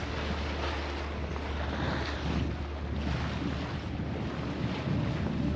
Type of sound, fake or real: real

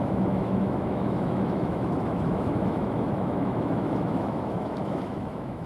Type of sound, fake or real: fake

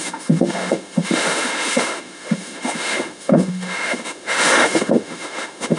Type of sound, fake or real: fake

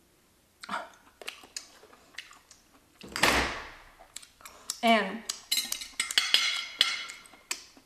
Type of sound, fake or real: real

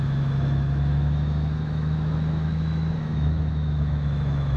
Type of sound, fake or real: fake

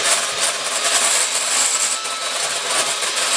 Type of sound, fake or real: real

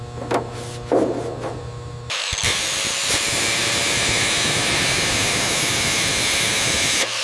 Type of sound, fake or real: real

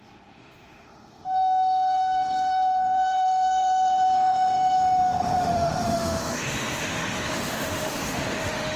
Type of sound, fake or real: fake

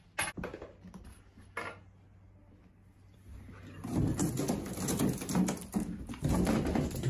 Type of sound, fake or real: real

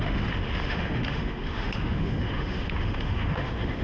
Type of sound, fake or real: fake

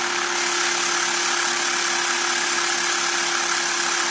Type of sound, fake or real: real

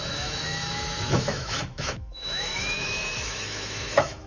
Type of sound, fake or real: fake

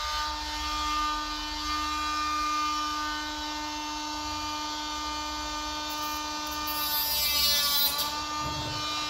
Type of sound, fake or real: real